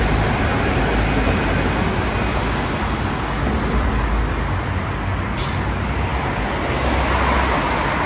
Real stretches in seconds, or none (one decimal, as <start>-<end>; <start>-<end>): 0.0-8.1